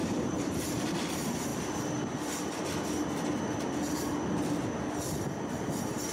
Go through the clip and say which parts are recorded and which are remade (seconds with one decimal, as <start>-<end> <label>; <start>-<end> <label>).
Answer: 0.0-0.9 remade; 0.9-6.1 recorded